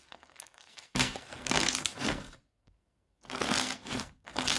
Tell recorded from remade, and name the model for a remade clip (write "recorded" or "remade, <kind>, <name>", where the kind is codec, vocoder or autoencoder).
remade, codec, SNAC